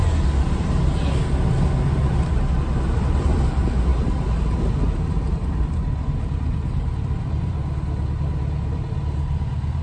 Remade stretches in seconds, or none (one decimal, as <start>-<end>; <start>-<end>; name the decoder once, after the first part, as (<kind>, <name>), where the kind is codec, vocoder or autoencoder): none